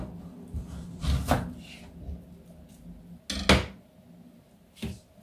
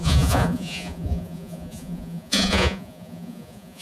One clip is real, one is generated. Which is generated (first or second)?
second